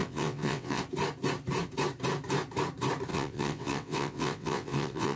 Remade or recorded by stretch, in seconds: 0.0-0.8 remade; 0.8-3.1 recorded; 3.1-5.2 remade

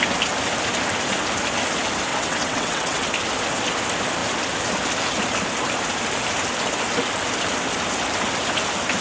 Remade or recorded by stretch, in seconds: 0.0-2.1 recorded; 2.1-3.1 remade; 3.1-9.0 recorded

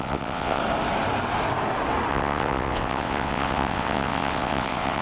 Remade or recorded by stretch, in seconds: 0.0-0.6 remade; 0.6-2.1 recorded; 2.1-5.0 remade

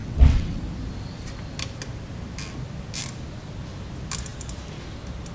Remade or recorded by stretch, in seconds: 0.0-0.6 remade; 0.6-5.3 recorded

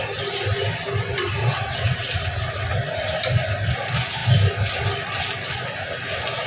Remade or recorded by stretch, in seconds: 0.0-1.4 recorded; 1.4-2.7 remade; 2.7-6.5 recorded

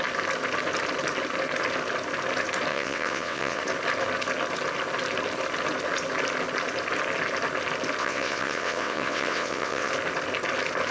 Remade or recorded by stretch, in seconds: 0.0-2.7 recorded; 2.7-3.6 remade; 3.6-8.0 recorded; 8.0-9.9 remade; 9.9-10.9 recorded

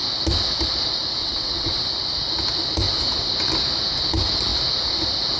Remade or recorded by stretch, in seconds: 0.0-1.2 recorded; 1.2-1.8 remade; 1.8-5.4 recorded